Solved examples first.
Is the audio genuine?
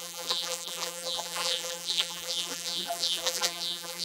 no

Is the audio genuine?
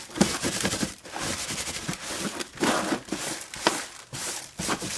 yes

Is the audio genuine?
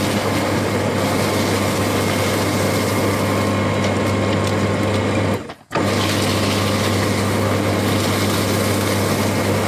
yes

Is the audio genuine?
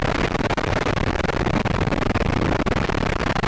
yes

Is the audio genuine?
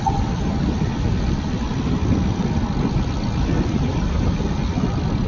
yes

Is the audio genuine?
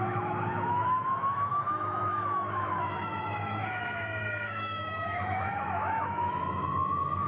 no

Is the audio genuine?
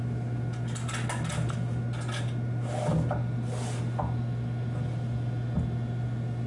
yes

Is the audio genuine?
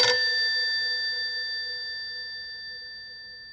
yes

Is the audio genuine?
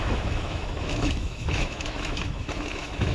no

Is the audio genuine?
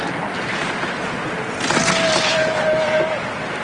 yes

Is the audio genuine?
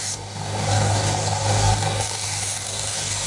no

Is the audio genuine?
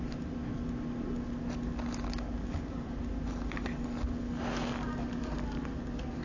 yes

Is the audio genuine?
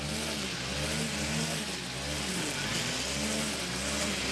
yes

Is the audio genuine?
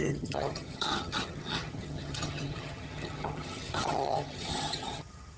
no